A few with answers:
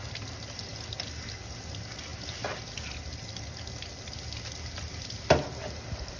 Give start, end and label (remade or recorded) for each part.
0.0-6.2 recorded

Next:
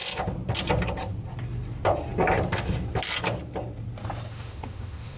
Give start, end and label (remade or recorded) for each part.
0.0-4.3 recorded; 4.3-5.2 remade

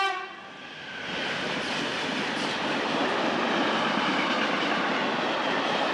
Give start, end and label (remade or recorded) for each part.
0.0-1.9 recorded; 1.9-5.4 remade; 5.4-5.9 recorded

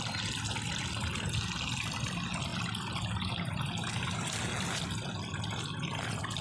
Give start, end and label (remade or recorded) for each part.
0.0-6.4 recorded

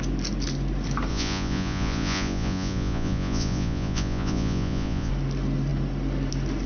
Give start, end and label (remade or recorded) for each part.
0.0-1.1 recorded; 1.1-5.1 remade; 5.1-6.7 recorded

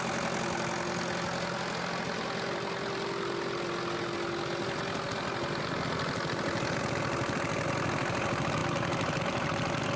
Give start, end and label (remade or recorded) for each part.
0.0-10.0 recorded

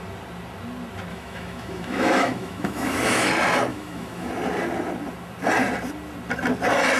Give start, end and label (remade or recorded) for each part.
0.0-1.1 recorded; 1.1-3.3 remade; 3.3-3.7 recorded; 3.7-4.3 remade; 4.3-7.0 recorded

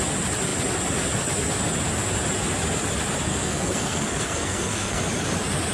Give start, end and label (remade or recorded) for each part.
0.0-3.2 recorded; 3.2-5.0 remade; 5.0-5.7 recorded